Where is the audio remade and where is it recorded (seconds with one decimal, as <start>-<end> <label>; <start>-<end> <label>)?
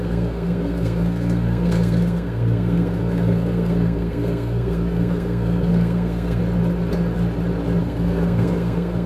0.0-6.4 remade; 6.4-7.8 recorded; 7.8-9.1 remade